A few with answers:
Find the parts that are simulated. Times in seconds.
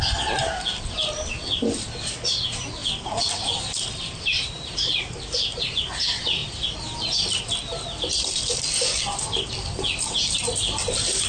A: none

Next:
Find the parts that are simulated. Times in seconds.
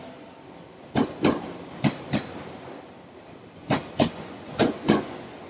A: 3.6-5.5 (vocoder, Vocos)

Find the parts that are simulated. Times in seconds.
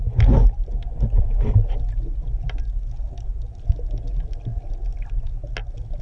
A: none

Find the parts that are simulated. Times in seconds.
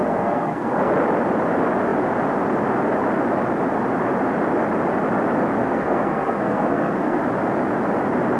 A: 0.0-0.9 (codec, SNAC); 5.6-7.2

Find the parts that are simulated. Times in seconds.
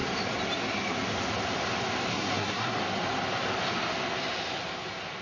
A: 2.1-2.8 (codec, SNAC)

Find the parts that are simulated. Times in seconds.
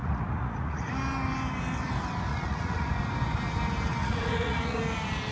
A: 0.0-0.9 (vocoder, Vocos); 2.3-2.9; 4.0-4.8